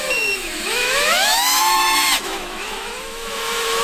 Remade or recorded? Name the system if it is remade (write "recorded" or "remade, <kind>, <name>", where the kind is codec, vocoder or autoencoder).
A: remade, autoencoder, DAC-VAE